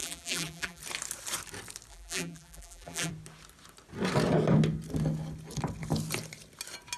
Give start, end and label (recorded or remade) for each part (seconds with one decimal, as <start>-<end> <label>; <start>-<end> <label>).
0.0-0.8 remade; 0.8-1.9 recorded; 1.9-3.1 remade; 3.1-7.0 recorded